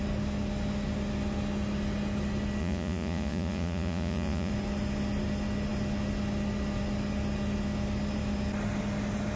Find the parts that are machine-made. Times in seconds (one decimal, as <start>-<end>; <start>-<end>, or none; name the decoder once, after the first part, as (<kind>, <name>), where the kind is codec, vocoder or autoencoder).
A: 2.6-4.5 (vocoder, Vocos)